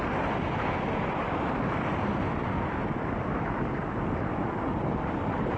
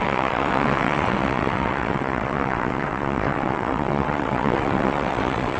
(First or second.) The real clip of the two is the first